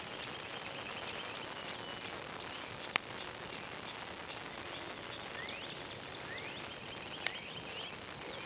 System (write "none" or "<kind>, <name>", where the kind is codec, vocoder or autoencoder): none